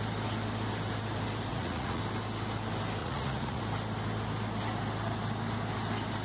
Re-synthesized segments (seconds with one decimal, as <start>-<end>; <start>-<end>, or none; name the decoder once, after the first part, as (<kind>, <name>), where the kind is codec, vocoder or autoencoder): 1.5-2.0 (vocoder, Vocos); 3.0-3.6